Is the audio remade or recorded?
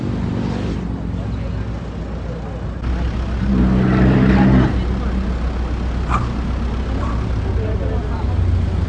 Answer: recorded